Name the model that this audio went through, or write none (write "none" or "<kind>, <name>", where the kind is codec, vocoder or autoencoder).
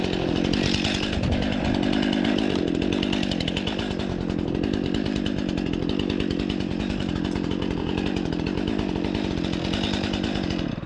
none